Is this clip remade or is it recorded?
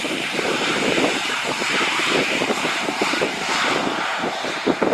remade